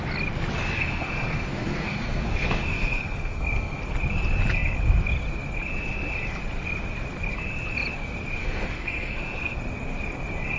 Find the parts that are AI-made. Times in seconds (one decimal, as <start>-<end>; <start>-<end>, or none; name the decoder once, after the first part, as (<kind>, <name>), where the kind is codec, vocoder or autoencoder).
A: 0.8-3.8 (codec, SNAC); 8.4-9.6